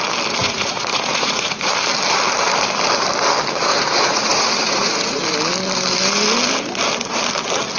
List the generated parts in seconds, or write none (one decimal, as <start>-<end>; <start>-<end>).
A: 0.4-1.7; 3.7-5.2